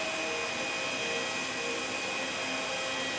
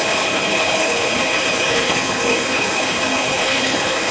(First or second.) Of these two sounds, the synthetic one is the second